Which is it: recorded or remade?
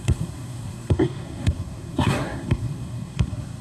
remade